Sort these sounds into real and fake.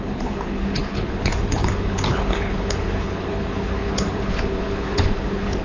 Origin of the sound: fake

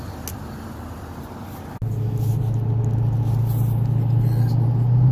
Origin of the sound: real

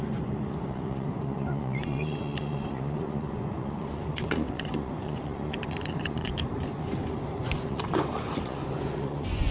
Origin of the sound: fake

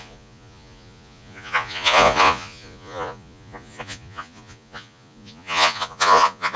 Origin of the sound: fake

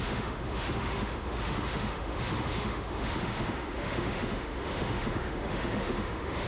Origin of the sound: fake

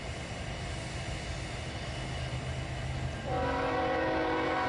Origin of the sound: real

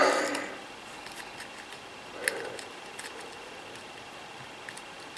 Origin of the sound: real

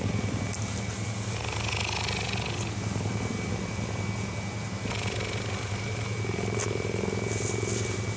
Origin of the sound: real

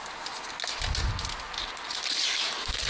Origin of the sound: real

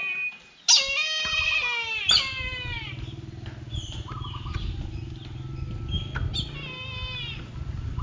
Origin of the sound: real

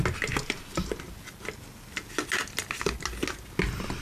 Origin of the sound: real